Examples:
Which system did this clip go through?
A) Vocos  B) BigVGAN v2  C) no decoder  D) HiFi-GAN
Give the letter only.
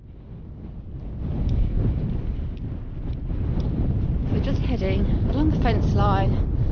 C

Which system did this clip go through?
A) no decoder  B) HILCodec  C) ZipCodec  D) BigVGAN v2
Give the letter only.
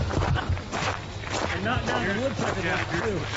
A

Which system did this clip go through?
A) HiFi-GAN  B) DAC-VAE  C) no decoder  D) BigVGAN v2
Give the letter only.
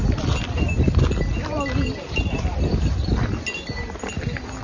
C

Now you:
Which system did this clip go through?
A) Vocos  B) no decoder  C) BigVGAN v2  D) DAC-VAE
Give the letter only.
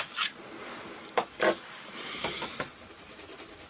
C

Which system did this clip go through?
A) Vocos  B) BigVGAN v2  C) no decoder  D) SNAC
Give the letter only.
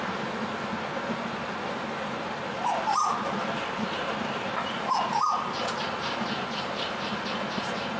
C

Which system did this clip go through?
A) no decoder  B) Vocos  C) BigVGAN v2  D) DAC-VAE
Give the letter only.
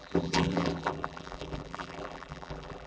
C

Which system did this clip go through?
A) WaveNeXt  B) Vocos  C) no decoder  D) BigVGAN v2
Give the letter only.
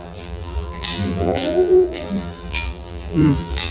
D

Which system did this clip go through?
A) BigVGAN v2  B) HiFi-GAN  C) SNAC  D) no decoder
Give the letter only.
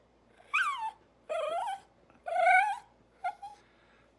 A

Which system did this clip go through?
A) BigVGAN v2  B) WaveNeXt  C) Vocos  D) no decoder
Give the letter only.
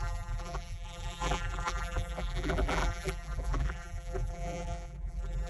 A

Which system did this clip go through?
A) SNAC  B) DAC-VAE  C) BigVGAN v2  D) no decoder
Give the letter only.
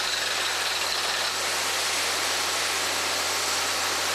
D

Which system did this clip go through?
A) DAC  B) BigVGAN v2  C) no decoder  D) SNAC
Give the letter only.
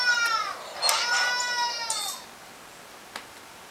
C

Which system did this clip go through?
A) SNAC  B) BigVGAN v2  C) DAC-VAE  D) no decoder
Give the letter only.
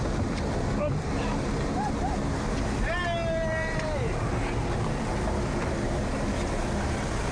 B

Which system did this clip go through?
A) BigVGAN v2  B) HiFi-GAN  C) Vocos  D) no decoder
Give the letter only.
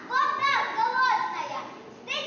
D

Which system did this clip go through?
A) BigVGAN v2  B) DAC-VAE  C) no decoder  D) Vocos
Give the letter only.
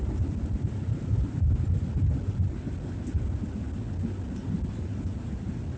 C